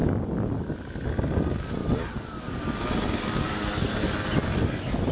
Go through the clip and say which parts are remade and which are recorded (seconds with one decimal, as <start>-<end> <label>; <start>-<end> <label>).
0.0-5.1 recorded